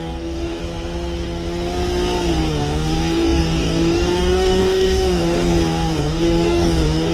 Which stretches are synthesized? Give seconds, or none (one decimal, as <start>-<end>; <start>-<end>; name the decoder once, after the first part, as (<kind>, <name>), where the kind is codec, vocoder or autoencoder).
0.0-0.6 (codec, DAC); 2.5-7.1